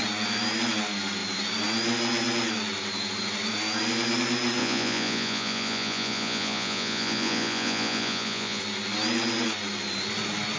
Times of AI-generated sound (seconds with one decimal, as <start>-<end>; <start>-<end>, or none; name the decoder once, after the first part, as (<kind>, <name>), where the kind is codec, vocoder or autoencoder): 4.6-8.6 (vocoder, Vocos)